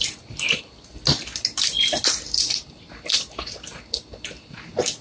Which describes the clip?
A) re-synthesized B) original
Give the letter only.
B